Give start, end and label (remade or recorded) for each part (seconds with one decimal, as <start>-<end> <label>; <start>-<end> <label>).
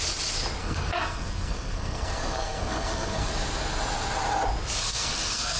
0.0-0.6 recorded; 0.6-3.3 remade; 3.3-4.8 recorded; 4.8-5.6 remade